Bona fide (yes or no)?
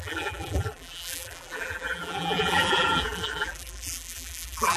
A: no